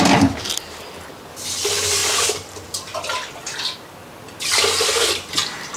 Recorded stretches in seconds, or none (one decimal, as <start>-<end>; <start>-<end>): 0.0-5.8